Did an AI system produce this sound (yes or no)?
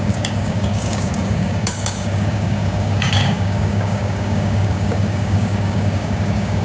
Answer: yes